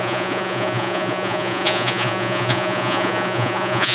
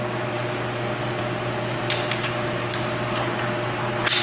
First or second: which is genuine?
second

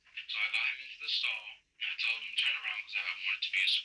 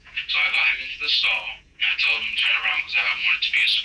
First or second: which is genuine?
first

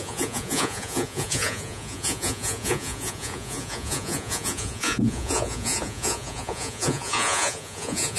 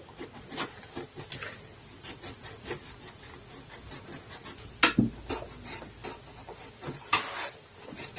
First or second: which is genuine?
second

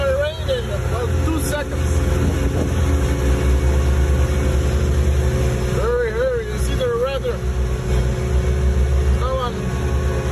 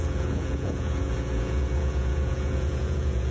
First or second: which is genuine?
first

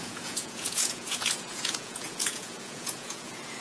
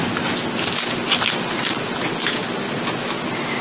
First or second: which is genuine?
second